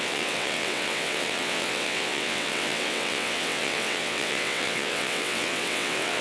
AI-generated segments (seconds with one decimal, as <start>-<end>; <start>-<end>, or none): 0.0-6.2